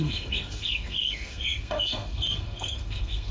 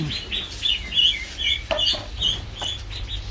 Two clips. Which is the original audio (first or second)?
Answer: second